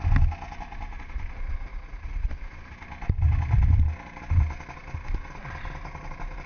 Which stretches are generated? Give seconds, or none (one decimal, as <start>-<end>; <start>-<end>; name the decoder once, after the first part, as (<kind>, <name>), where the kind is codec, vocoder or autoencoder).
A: 1.7-2.3 (vocoder, Vocos)